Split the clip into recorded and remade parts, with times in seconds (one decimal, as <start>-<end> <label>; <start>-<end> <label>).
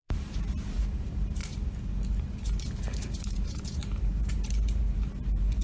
0.0-1.4 remade; 1.4-2.8 recorded; 2.8-4.1 remade; 4.1-5.6 recorded